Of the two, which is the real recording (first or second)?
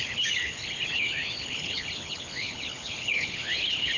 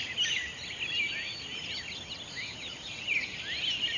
second